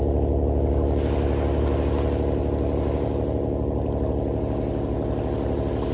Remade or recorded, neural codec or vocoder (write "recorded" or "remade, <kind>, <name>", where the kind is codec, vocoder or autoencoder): recorded